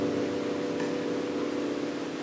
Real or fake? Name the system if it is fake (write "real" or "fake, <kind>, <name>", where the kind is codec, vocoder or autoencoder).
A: real